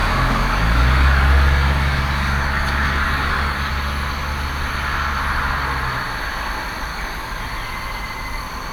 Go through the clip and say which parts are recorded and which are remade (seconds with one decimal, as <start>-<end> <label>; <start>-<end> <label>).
0.0-3.7 remade; 3.7-6.9 recorded; 6.9-7.4 remade; 7.4-8.7 recorded